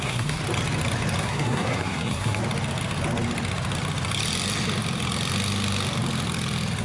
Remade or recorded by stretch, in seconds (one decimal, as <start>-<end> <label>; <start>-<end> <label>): 0.0-0.4 remade; 0.4-1.2 recorded; 1.2-2.4 remade; 2.4-6.8 recorded